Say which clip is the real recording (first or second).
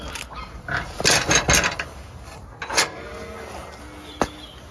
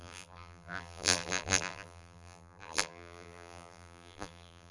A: first